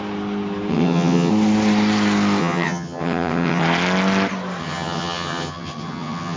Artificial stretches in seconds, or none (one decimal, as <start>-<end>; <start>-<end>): 0.7-1.3; 2.4-3.6; 4.6-6.4